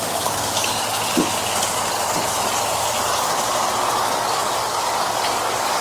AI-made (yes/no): yes